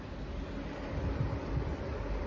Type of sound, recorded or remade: recorded